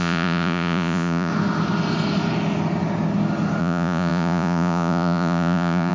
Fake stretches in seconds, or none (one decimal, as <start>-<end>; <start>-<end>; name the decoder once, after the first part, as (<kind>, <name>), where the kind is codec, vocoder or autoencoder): 0.0-1.3 (vocoder, Vocos); 3.6-5.9